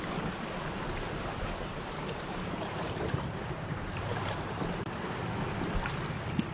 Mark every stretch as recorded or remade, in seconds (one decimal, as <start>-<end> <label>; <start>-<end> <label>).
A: 0.0-1.7 recorded; 1.7-5.0 remade; 5.0-6.5 recorded